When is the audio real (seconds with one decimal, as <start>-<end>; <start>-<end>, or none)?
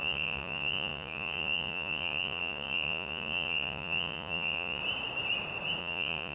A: 4.8-5.8